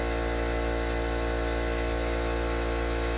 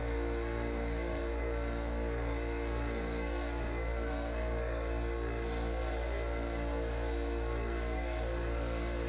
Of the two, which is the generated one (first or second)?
second